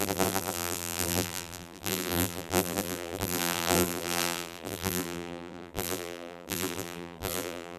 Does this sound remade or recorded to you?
remade